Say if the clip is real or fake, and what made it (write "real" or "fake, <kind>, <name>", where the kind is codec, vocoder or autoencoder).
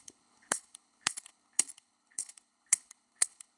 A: fake, codec, HILCodec